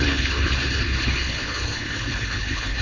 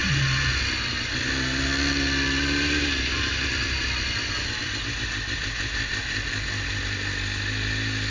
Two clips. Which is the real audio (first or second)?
second